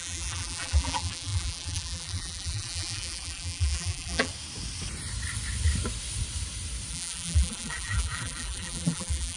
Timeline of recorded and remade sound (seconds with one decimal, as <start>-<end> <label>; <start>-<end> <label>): 0.0-4.3 remade; 4.3-6.9 recorded; 6.9-9.4 remade